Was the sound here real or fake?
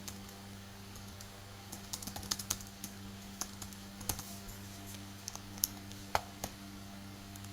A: fake